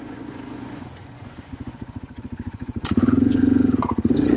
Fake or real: fake